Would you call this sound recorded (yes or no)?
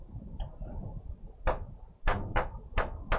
yes